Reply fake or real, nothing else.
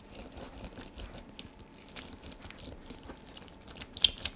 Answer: real